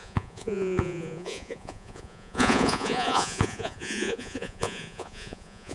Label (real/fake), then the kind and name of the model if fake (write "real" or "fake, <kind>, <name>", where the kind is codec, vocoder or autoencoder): fake, vocoder, Vocos